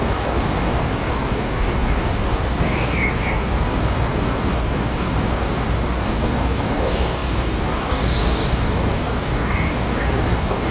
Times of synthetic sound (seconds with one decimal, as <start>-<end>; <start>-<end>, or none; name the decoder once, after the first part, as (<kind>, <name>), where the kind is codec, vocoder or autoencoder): 0.0-10.7 (codec, DAC)